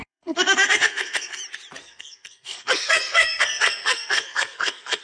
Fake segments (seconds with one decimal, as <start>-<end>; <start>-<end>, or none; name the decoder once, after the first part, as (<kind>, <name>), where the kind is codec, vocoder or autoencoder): 0.0-1.4 (codec, SNAC); 1.8-5.0